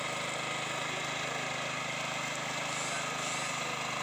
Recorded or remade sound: recorded